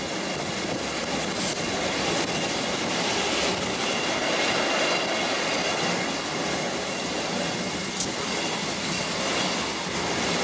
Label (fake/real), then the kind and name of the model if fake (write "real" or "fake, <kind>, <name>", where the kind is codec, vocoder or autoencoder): real